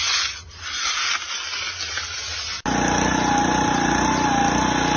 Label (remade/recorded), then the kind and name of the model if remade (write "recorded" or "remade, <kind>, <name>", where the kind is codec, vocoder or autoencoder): recorded